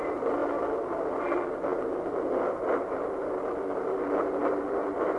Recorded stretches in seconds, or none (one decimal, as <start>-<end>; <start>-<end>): 0.0-5.2